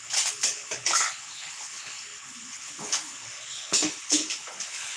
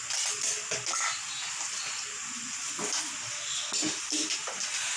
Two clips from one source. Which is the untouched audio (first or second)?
second